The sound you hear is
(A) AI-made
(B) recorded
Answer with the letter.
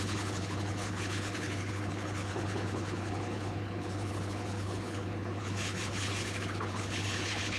A